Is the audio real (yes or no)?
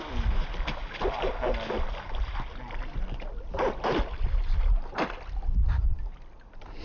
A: yes